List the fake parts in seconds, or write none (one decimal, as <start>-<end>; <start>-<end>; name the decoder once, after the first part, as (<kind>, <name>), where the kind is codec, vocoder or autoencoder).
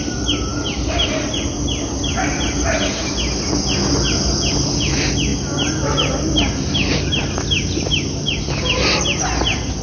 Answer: none